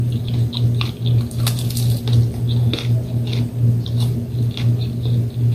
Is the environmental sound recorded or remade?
recorded